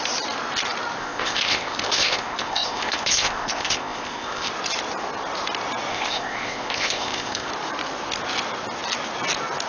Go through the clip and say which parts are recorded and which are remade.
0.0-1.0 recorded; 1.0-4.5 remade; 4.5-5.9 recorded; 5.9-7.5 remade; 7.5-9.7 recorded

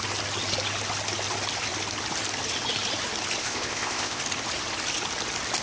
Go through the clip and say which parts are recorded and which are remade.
0.0-3.4 recorded; 3.4-4.2 remade; 4.2-5.6 recorded